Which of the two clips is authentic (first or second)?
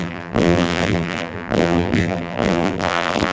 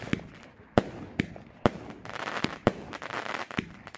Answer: second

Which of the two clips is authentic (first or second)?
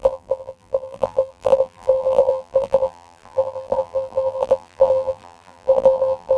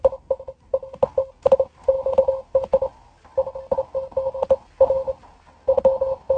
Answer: second